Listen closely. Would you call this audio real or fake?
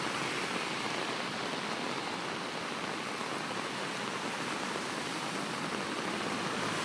real